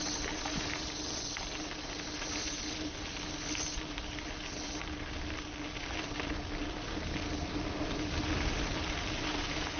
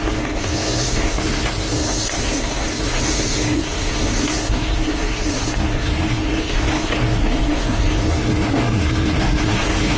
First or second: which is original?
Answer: first